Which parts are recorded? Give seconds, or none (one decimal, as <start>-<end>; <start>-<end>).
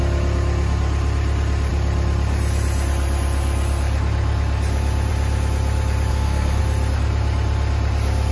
0.0-6.1; 6.6-8.3